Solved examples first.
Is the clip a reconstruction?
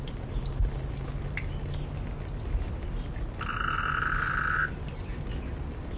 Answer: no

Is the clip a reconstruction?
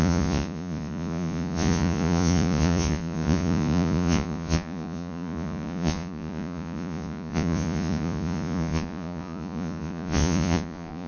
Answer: yes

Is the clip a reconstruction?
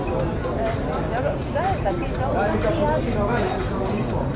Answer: no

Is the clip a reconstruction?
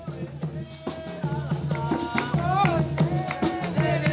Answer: no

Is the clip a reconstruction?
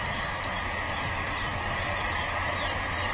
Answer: no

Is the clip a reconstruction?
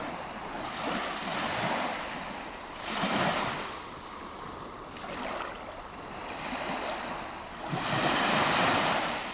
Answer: no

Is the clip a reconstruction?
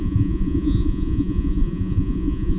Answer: yes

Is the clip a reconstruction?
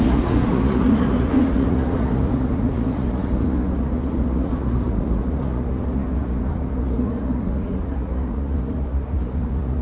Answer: yes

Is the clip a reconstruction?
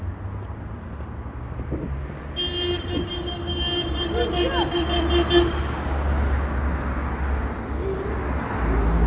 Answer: no